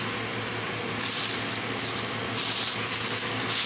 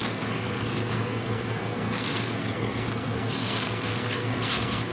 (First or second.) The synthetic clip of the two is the second